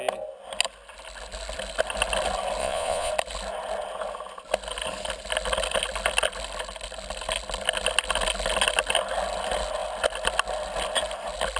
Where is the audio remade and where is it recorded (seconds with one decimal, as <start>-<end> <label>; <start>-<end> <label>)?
0.0-2.6 recorded; 2.6-3.1 remade; 3.1-11.6 recorded